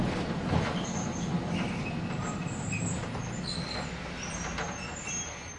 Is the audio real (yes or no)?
yes